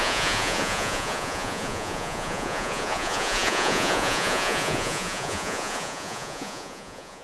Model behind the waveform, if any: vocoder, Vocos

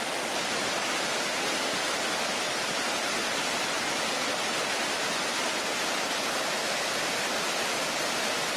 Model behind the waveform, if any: none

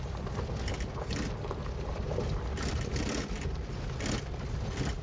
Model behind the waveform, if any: none